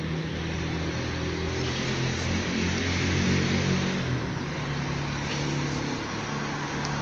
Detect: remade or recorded recorded